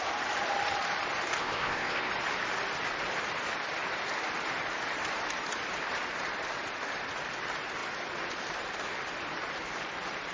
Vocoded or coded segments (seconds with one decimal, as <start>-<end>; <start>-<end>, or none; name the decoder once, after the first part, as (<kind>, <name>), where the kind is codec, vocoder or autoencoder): 1.4-2.1 (codec, ZipCodec)